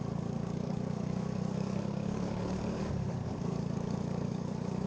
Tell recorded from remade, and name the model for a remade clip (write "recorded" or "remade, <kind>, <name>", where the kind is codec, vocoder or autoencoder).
remade, codec, DAC